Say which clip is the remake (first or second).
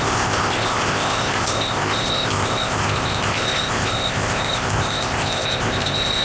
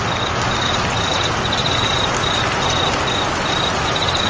first